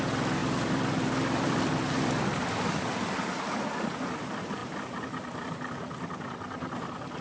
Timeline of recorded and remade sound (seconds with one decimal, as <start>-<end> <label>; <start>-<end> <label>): 0.0-7.2 recorded